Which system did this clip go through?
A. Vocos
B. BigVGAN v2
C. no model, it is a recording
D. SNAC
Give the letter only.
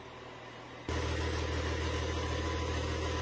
C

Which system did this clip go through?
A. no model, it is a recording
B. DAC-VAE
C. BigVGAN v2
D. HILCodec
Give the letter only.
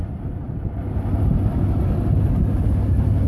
A